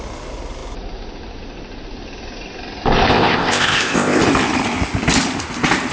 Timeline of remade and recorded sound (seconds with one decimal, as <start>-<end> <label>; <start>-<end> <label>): 0.0-3.1 recorded; 3.1-4.2 remade; 4.2-5.9 recorded